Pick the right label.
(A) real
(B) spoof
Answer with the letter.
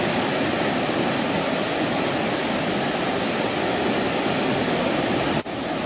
A